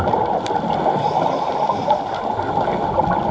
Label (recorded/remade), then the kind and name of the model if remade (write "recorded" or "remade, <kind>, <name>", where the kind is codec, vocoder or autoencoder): recorded